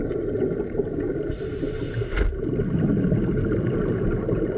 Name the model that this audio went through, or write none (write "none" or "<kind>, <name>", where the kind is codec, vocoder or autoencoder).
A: none